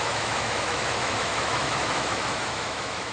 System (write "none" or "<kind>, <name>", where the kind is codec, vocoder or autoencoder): autoencoder, DAC-VAE